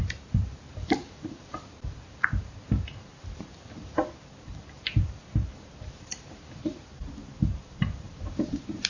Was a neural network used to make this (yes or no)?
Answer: yes